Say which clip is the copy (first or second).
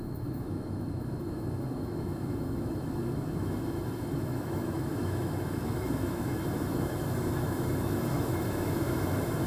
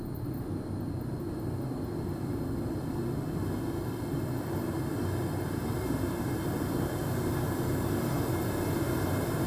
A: first